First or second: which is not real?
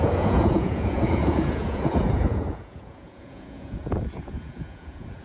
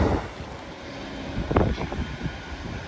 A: first